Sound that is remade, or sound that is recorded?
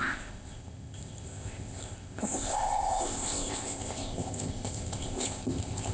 remade